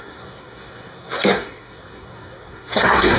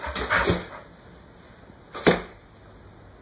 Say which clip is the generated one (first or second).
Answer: first